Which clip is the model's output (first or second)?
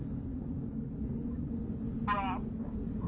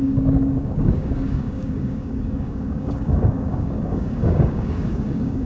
second